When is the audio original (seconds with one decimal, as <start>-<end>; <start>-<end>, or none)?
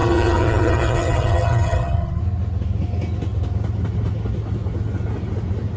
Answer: 2.2-5.8